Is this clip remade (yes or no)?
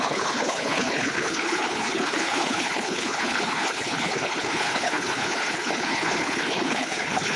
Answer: yes